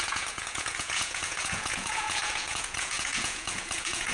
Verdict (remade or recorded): remade